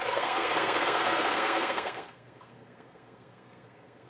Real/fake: fake